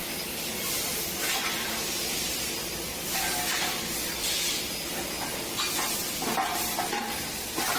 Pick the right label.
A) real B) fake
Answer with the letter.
A